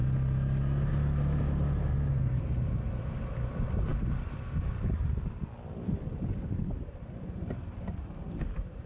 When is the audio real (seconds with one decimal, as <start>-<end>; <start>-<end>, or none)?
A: 0.0-0.9